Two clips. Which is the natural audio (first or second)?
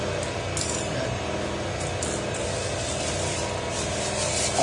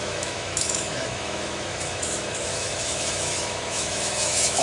first